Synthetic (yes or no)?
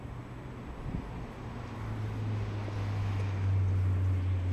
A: no